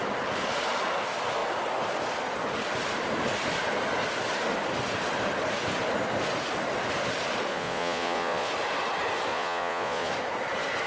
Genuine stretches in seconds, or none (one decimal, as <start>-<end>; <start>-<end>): 0.0-7.5; 8.5-9.3; 10.1-10.9